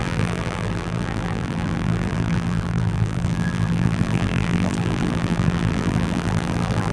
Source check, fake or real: fake